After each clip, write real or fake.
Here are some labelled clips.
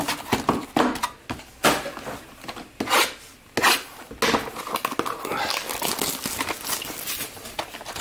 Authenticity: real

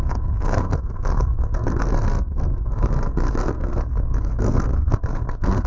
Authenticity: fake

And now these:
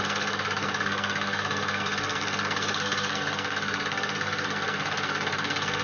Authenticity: fake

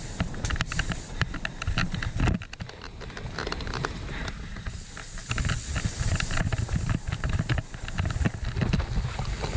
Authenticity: real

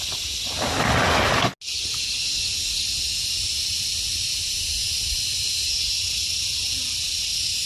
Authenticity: real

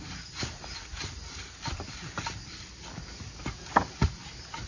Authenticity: real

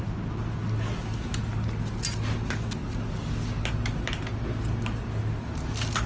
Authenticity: real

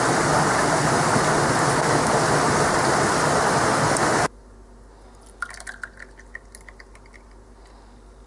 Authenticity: real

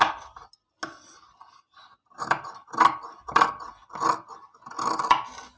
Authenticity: real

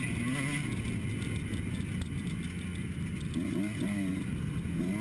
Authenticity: real